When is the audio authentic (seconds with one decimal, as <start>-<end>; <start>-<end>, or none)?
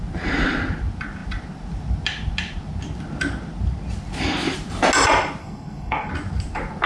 0.0-5.4; 6.1-6.9